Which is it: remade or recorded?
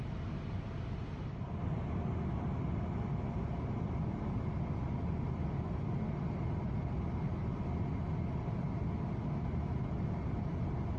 recorded